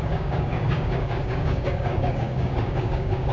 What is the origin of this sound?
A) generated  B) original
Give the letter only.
A